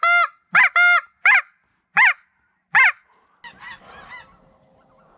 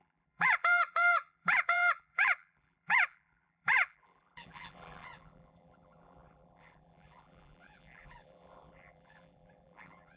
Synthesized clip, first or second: second